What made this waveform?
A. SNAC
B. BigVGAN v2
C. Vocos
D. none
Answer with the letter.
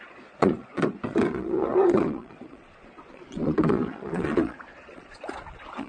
C